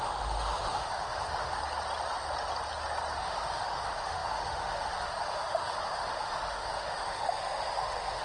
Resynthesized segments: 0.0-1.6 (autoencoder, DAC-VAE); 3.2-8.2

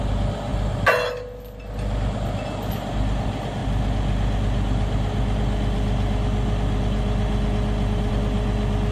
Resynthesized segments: none

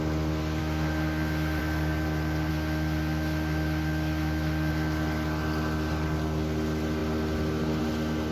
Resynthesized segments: 0.6-1.6 (autoencoder, DAC-VAE); 2.5-4.7

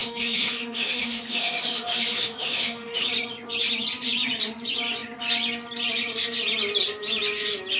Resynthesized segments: 0.0-3.1 (autoencoder, DAC-VAE)

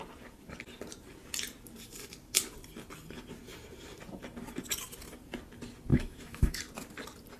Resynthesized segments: 5.9-6.6 (autoencoder, DAC-VAE)